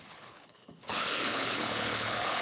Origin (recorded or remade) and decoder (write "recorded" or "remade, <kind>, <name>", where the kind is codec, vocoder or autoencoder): remade, codec, HILCodec